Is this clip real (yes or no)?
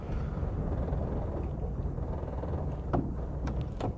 yes